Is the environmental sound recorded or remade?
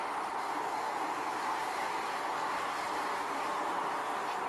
recorded